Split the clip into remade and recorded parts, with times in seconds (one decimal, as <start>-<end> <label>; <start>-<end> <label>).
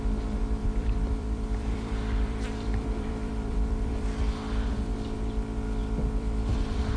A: 0.0-0.6 recorded; 0.6-4.7 remade; 4.7-5.8 recorded; 5.8-7.0 remade